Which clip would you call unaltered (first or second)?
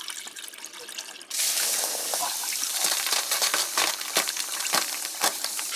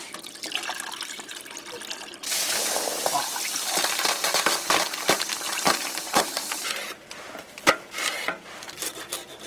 first